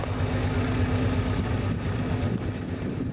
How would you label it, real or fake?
real